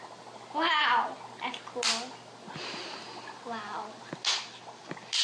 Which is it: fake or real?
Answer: real